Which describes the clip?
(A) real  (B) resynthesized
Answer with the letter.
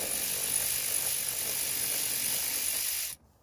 A